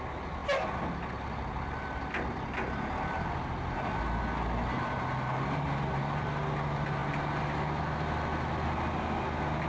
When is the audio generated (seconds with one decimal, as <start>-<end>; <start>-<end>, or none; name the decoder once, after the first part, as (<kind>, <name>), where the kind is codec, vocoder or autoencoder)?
none